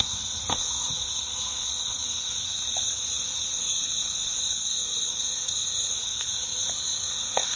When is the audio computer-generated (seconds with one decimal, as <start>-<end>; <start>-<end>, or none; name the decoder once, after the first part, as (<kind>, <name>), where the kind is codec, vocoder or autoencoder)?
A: 0.0-7.6 (codec, SNAC)